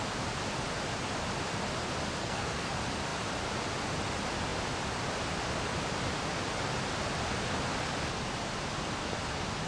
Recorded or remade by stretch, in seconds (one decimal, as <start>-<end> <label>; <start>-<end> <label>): 0.0-2.2 recorded; 2.2-2.7 remade; 2.7-9.7 recorded